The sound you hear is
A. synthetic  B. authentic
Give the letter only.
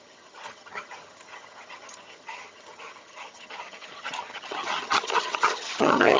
A